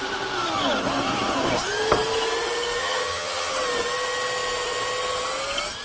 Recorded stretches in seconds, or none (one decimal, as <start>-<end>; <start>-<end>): 0.0-2.8; 3.5-5.8